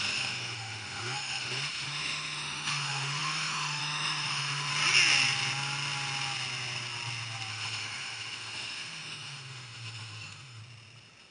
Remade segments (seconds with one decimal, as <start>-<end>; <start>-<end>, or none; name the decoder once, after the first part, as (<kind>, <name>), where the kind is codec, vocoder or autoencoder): 0.0-4.7 (autoencoder, DAC-VAE); 7.5-10.6